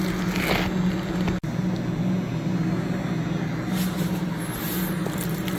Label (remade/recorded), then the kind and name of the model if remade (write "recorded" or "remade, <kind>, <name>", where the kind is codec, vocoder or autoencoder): recorded